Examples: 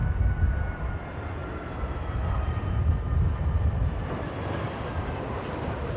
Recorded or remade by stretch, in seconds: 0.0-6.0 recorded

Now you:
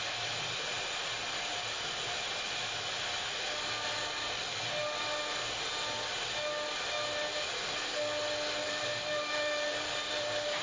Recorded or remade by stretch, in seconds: 0.0-3.9 recorded; 3.9-4.7 remade; 4.7-8.6 recorded; 8.6-10.6 remade

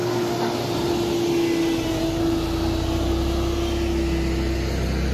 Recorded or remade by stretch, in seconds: 0.0-5.1 recorded

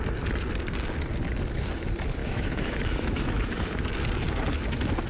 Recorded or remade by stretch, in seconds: 0.0-2.2 recorded; 2.2-3.9 remade; 3.9-5.1 recorded

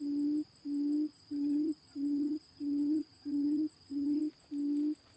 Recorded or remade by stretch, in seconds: 0.0-1.1 recorded; 1.1-4.2 remade; 4.2-5.2 recorded